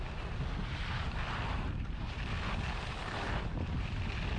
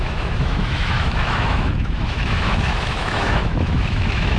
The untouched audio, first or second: first